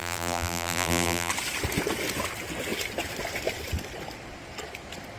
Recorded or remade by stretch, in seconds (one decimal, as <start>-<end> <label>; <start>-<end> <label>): 0.0-1.3 remade; 1.3-5.2 recorded